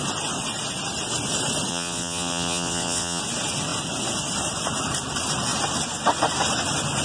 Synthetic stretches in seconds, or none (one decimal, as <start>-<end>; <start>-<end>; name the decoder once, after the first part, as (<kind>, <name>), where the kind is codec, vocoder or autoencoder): 1.7-3.2 (vocoder, WaveNeXt)